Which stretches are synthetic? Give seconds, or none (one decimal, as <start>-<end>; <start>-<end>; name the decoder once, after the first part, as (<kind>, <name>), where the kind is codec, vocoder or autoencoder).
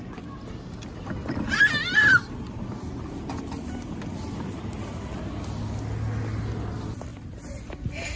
none